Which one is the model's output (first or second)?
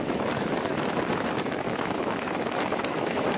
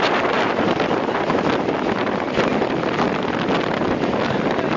first